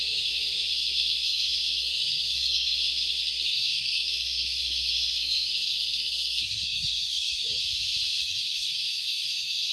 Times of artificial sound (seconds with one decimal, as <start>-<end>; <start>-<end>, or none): 0.0-7.6; 8.2-9.7